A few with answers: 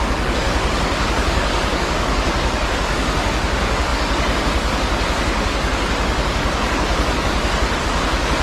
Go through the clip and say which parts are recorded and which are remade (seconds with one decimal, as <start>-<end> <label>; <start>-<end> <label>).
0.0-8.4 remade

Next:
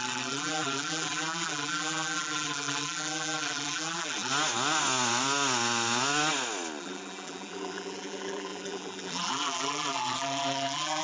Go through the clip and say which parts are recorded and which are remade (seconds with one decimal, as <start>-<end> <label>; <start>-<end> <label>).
0.0-4.3 remade; 4.3-6.8 recorded; 6.8-11.0 remade

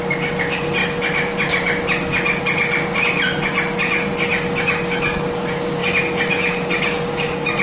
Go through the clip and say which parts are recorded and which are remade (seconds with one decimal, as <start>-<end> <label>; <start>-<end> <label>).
0.0-5.8 recorded; 5.8-6.7 remade; 6.7-7.6 recorded

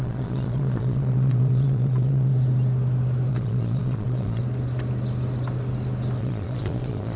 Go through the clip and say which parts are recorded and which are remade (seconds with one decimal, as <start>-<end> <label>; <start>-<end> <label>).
0.0-2.3 remade; 2.3-3.3 recorded; 3.3-4.4 remade; 4.4-6.2 recorded; 6.2-7.2 remade

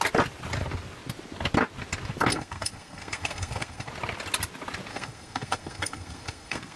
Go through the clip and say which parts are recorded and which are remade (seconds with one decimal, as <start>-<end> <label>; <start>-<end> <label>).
0.0-2.3 recorded; 2.3-3.9 remade; 3.9-4.9 recorded; 4.9-6.8 remade

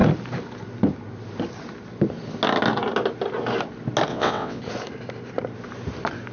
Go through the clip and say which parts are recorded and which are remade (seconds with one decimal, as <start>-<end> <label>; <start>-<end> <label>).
0.0-4.1 recorded; 4.1-4.6 remade; 4.6-6.3 recorded

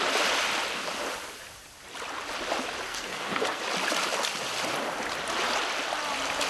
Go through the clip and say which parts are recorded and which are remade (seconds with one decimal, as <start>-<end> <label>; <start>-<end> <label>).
0.0-2.9 recorded; 2.9-3.6 remade; 3.6-6.5 recorded

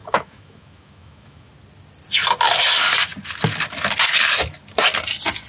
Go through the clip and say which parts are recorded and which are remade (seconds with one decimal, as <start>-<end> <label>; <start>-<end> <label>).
0.0-1.5 remade; 1.5-5.5 recorded